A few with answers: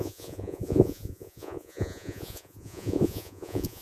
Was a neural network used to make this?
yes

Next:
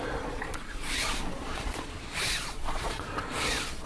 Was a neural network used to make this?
yes